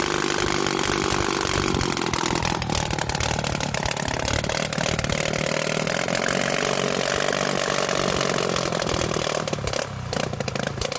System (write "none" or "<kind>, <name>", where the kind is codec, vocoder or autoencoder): none